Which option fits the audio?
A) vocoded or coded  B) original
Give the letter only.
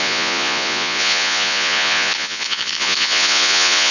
A